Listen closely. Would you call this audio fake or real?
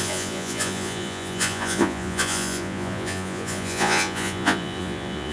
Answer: fake